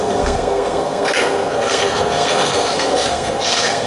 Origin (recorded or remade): remade